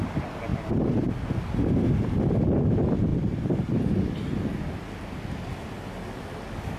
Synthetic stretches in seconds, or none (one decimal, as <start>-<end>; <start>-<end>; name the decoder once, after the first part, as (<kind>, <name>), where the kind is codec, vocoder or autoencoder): none